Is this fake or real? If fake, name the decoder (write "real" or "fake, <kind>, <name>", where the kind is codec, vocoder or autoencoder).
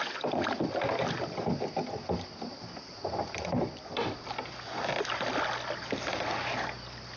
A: real